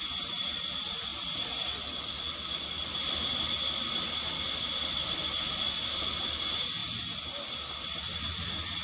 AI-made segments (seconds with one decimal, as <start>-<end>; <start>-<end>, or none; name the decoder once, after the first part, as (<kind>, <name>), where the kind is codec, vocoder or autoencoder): none